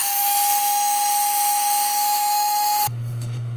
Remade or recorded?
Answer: remade